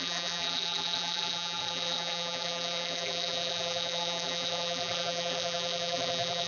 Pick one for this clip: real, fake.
fake